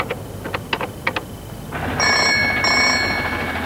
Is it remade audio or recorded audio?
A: recorded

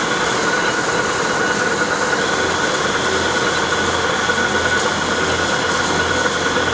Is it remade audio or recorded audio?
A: recorded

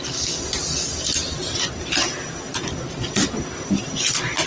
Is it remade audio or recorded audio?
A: recorded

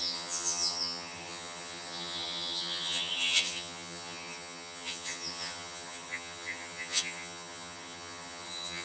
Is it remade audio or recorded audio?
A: remade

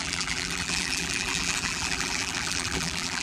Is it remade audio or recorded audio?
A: remade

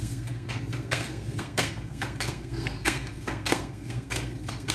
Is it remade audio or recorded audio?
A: remade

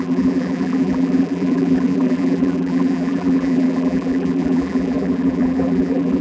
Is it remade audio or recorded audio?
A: remade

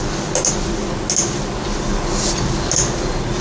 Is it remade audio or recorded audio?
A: recorded